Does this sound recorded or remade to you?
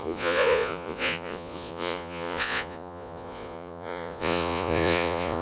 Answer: remade